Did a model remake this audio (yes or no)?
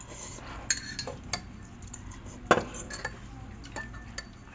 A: no